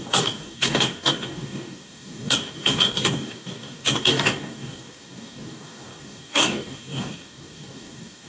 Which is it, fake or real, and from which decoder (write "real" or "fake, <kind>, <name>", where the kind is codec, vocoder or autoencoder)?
fake, codec, DAC